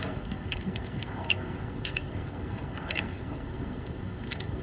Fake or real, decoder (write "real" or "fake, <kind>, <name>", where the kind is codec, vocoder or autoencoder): fake, codec, SNAC